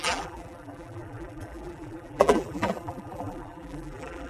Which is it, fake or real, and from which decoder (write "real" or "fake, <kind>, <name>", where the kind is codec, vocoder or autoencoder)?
fake, vocoder, BigVGAN v2